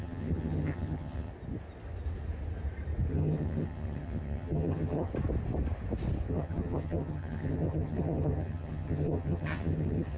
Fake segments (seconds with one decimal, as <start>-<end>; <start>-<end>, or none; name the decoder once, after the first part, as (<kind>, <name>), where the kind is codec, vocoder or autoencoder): 0.0-1.3 (vocoder, HiFi-GAN); 3.1-5.1; 6.3-10.2